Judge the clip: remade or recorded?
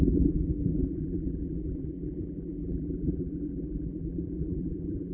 remade